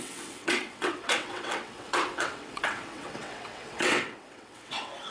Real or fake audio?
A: fake